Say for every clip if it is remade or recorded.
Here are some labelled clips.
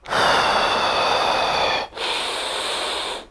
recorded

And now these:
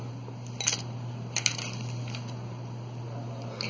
recorded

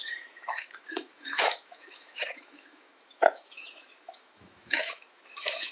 remade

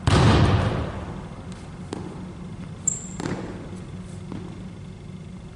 recorded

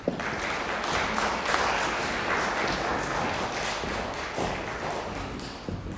recorded